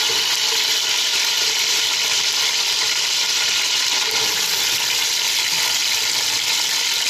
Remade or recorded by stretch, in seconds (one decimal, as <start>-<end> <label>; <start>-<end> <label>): 0.0-1.1 recorded; 1.1-3.3 remade; 3.3-7.1 recorded